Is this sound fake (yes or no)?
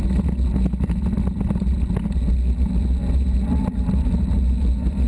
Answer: no